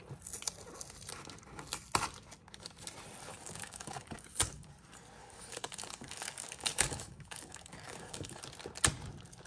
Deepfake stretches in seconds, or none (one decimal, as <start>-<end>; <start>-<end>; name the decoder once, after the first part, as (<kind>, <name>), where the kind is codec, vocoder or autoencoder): 3.3-4.7 (codec, DAC); 5.2-8.4